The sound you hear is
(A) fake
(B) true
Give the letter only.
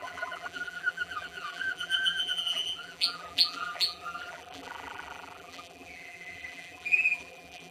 A